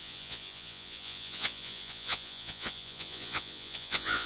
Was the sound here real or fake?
fake